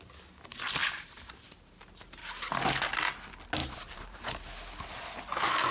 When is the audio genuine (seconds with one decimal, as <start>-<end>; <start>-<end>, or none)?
0.0-0.8; 1.4-3.6; 4.3-5.7